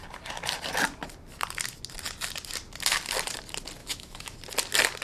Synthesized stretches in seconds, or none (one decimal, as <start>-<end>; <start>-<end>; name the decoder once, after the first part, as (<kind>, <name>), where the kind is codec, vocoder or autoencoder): 3.8-4.4 (autoencoder, DAC-VAE)